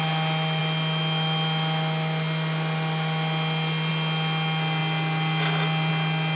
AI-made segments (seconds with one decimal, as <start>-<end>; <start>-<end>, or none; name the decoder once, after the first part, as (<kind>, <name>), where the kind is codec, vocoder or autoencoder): none